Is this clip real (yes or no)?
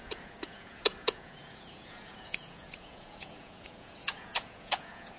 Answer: no